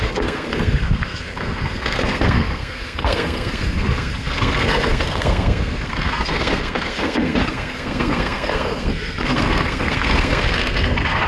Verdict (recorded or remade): remade